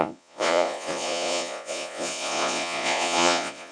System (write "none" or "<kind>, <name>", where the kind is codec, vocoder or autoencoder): vocoder, Vocos